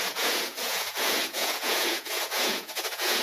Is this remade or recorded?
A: remade